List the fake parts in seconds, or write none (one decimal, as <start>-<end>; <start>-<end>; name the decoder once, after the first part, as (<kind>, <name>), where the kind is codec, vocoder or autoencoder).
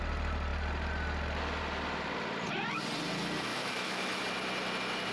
3.5-4.2 (autoencoder, DAC-VAE)